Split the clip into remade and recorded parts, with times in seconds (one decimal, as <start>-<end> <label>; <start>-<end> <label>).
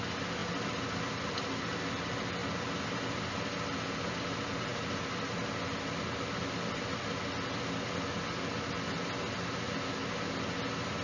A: 0.0-11.0 recorded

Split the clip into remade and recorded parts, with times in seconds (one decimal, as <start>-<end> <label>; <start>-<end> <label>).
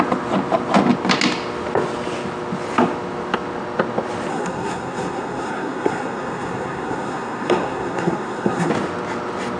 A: 0.0-4.3 recorded; 4.3-8.7 remade; 8.7-9.6 recorded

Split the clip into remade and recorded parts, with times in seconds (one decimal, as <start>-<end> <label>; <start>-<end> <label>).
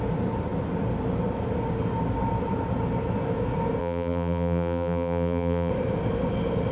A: 0.0-3.8 recorded; 3.8-5.7 remade; 5.7-6.7 recorded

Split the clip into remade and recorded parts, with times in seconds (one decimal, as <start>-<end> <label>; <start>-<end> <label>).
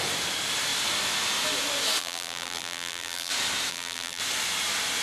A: 0.0-2.0 recorded; 2.0-3.3 remade; 3.3-3.7 recorded; 3.7-4.2 remade; 4.2-5.0 recorded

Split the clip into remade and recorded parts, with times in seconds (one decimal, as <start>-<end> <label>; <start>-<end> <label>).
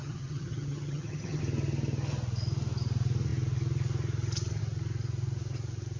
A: 0.0-1.4 remade; 1.4-6.0 recorded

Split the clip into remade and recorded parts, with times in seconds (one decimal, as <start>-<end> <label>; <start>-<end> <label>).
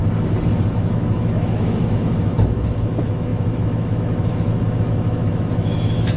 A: 0.0-0.6 recorded; 0.6-6.2 remade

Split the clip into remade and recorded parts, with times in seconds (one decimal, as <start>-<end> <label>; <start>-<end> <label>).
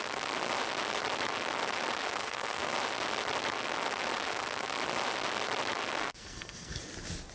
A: 0.0-2.2 recorded; 2.2-2.7 remade; 2.7-6.0 recorded; 6.0-6.8 remade; 6.8-7.3 recorded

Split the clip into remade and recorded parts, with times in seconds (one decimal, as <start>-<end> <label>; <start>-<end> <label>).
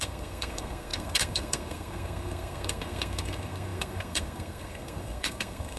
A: 0.0-5.8 remade